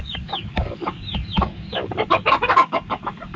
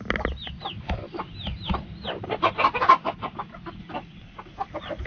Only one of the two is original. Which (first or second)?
second